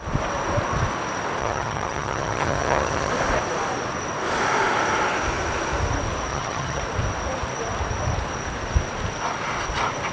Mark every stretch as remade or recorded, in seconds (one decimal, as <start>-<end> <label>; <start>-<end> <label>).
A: 0.0-1.4 recorded; 1.4-3.1 remade; 3.1-6.3 recorded; 6.3-6.8 remade; 6.8-10.1 recorded